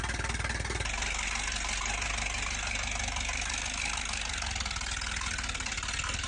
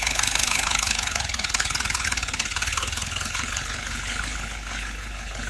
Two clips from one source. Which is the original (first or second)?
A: first